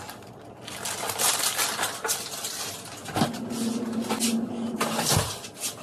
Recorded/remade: recorded